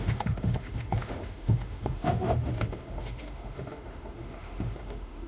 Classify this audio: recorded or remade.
remade